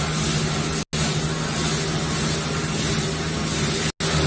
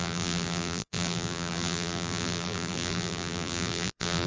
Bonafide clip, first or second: first